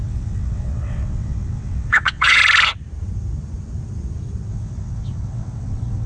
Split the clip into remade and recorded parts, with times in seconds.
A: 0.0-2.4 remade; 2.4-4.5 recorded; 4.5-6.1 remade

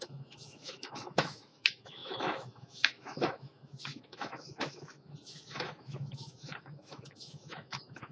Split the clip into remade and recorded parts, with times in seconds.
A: 0.0-8.1 remade

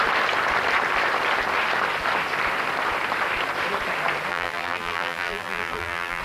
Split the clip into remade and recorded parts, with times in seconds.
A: 0.0-4.3 recorded; 4.3-6.2 remade

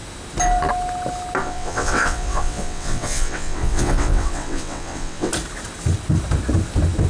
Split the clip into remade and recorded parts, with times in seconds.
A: 0.0-1.4 recorded; 1.4-5.3 remade; 5.3-7.1 recorded